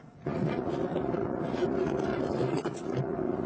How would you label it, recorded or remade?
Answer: remade